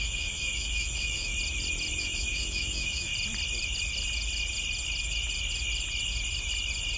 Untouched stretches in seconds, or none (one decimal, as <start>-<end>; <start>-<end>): 1.3-2.0; 3.1-7.0